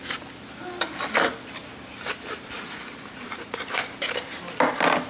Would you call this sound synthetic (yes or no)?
no